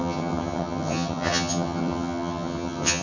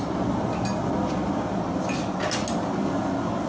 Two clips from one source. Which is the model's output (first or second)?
first